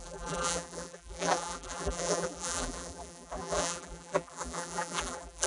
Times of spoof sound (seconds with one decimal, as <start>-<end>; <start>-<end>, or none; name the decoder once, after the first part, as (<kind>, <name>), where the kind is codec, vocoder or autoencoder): 0.0-5.5 (vocoder, BigVGAN v2)